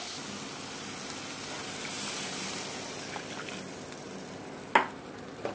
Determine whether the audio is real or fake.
real